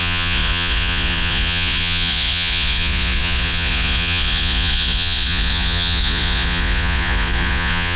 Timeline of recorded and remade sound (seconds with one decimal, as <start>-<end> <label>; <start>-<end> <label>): 0.0-8.0 remade